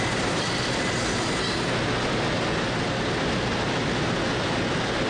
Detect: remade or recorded recorded